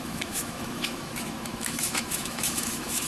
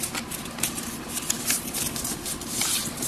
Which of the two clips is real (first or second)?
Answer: second